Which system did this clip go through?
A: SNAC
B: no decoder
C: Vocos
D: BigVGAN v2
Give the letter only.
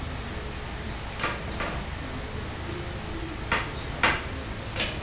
B